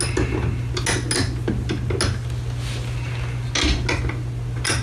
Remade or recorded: recorded